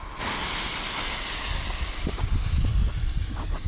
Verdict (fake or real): real